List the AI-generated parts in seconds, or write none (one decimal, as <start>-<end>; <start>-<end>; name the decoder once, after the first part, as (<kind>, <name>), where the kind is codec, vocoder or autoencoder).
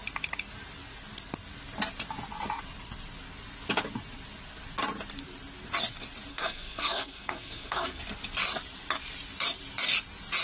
6.3-8.0 (codec, SNAC)